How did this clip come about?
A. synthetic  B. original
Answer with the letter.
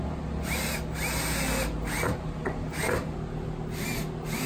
B